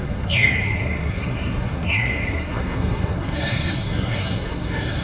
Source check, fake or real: fake